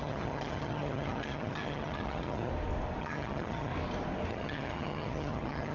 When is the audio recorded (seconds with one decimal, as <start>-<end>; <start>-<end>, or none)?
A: 2.5-3.0; 3.7-4.3